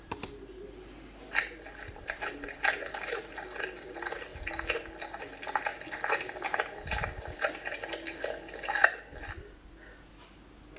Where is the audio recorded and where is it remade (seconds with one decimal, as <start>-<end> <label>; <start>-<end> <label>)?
0.0-10.8 recorded